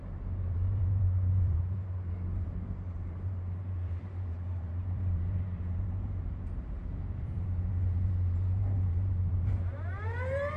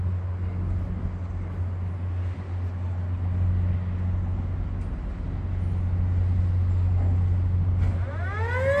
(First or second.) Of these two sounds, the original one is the second